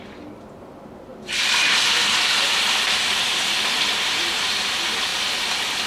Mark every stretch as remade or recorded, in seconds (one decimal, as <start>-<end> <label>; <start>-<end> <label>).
0.0-1.1 recorded; 1.1-4.6 remade; 4.6-5.9 recorded